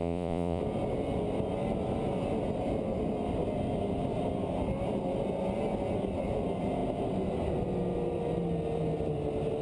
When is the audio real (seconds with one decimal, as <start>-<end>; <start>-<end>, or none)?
0.6-9.6